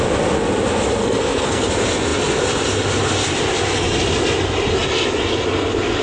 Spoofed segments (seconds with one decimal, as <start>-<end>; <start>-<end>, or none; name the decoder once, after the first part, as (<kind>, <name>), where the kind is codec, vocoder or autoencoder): 1.0-1.7 (codec, SNAC)